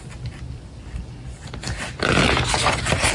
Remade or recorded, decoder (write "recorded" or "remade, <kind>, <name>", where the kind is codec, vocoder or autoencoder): recorded